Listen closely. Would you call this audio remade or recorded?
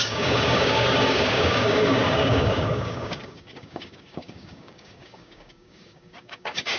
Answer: remade